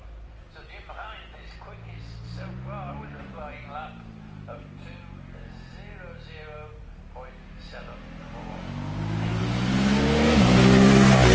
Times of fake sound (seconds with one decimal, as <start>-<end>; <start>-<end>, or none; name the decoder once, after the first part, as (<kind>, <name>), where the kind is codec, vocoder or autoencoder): none